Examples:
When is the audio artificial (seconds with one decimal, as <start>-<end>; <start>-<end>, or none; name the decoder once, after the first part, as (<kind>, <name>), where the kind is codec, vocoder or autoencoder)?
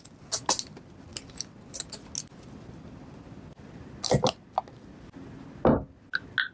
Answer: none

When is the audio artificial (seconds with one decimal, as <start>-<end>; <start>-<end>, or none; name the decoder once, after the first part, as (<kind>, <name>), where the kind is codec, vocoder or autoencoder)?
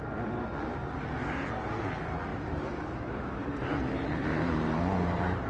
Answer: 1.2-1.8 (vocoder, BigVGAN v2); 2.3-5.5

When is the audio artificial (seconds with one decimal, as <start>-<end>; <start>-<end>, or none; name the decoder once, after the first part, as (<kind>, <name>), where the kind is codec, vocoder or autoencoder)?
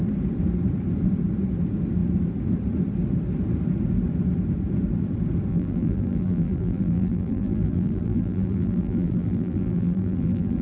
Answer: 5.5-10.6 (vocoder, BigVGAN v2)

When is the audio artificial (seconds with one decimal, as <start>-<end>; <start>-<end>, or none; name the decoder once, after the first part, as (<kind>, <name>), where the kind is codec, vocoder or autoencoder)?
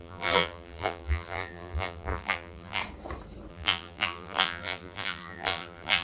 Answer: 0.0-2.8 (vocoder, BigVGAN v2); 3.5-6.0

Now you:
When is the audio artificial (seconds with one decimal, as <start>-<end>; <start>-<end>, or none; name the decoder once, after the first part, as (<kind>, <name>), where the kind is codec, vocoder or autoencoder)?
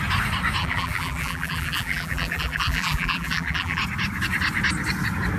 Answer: 0.6-3.8 (vocoder, BigVGAN v2)